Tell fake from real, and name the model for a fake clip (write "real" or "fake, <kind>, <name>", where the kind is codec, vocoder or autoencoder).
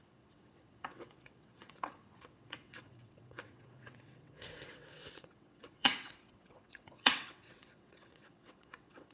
fake, vocoder, WaveNeXt